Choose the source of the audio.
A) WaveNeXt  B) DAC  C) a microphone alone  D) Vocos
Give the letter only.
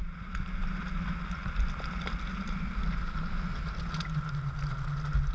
C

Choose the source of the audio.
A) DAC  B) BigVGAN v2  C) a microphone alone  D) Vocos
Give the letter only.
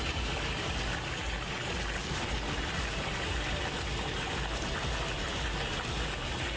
C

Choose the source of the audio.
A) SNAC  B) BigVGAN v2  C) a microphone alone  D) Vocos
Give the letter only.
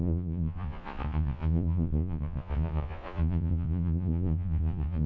D